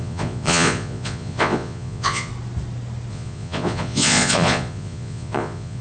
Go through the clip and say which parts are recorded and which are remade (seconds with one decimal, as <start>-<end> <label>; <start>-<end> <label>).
0.0-2.3 remade; 2.3-3.1 recorded; 3.1-5.8 remade